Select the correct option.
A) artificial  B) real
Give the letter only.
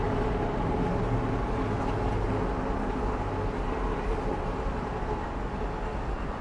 B